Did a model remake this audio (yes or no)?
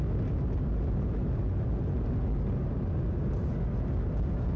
no